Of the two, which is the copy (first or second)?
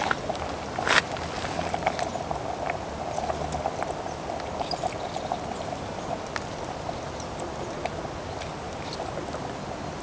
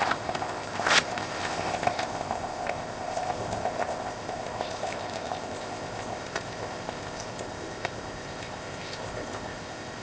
second